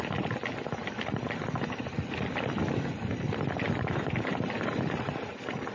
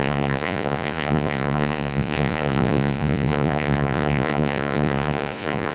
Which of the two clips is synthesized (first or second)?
second